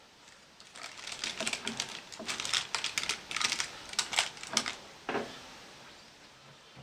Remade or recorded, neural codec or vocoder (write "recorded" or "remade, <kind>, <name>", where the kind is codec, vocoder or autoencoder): recorded